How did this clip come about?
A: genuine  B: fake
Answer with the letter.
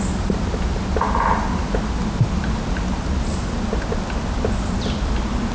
A